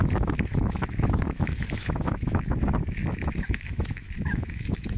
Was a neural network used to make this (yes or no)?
yes